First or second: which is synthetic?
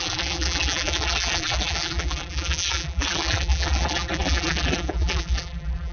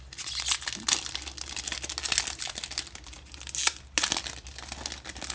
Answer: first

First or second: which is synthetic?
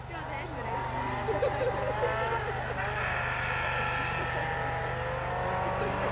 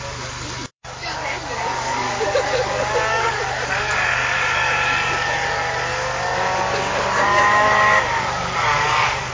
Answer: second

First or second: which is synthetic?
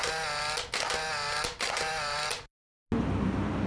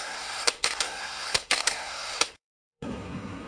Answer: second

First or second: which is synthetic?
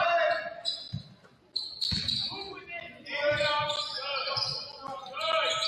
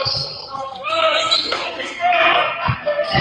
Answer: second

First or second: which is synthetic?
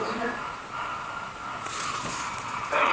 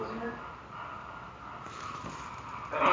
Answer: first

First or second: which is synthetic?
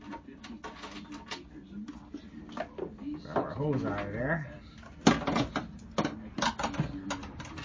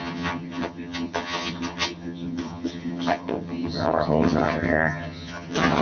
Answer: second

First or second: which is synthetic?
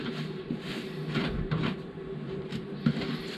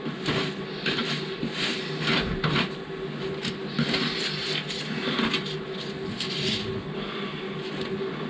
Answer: first